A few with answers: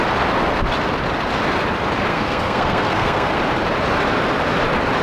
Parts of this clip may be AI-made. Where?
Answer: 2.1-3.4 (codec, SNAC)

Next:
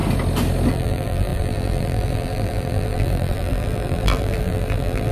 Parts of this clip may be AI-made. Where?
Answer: 0.7-5.1 (vocoder, BigVGAN v2)

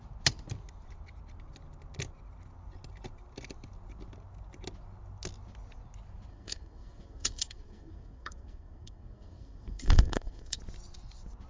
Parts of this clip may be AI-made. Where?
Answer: 6.3-10.6 (codec, SNAC)

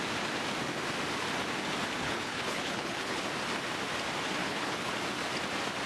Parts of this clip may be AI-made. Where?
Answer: 2.0-3.2 (codec, HILCodec); 4.4-4.9

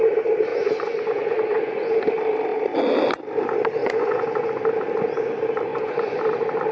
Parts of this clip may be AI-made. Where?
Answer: 0.5-2.0 (vocoder, Vocos); 3.8-4.5; 5.7-6.2

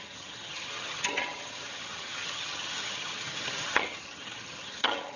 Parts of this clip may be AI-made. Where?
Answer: 0.0-5.2 (vocoder, HiFi-GAN)

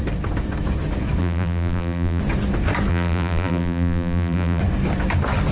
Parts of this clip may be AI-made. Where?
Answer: 1.2-2.2 (vocoder, BigVGAN v2); 2.9-4.6

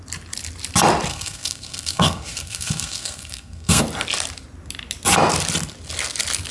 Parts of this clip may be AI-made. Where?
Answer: 1.1-3.8 (codec, SNAC)